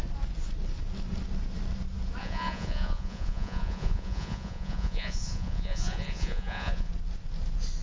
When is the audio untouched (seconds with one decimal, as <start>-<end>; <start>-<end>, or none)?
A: 0.0-2.2; 6.9-7.8